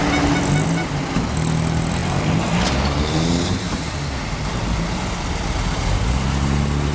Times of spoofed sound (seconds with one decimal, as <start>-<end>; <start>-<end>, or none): 2.0-4.0